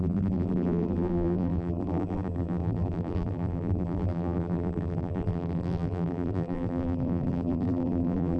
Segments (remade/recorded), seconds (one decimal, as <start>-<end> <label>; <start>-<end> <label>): 0.0-8.4 remade